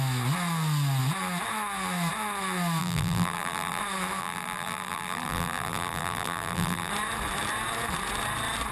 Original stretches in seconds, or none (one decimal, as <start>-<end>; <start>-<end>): 0.0-2.8; 3.8-4.2; 6.9-8.7